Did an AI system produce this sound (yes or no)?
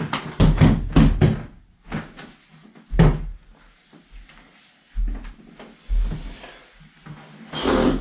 no